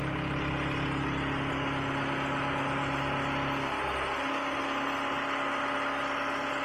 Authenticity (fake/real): real